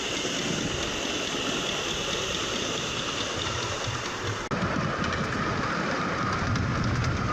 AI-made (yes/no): no